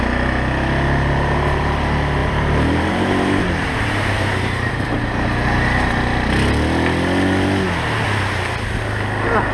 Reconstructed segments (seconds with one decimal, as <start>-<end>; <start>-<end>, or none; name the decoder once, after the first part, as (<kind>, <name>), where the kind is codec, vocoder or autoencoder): 2.2-5.9 (vocoder, BigVGAN v2)